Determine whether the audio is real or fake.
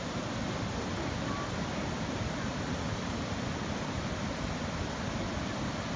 real